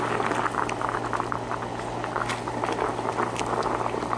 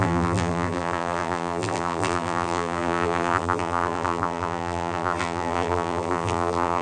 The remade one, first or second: second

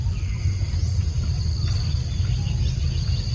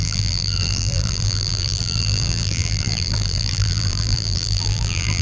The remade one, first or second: second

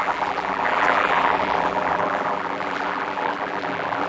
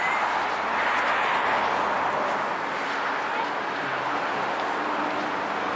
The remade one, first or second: first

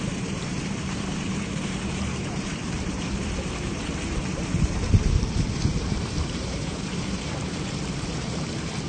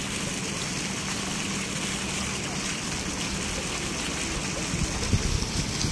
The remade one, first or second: first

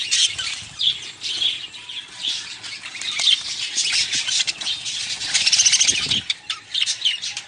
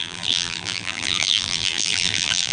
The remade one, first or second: second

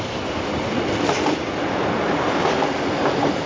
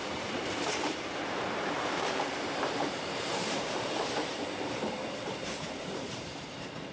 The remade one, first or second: second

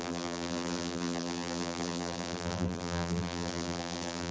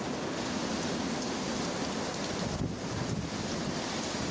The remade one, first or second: first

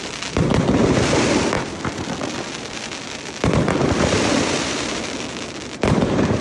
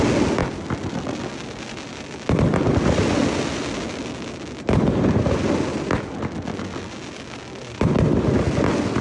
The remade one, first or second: first